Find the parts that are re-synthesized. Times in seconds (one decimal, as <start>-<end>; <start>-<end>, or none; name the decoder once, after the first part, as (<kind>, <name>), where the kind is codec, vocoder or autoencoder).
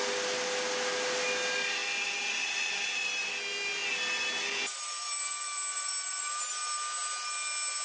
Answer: none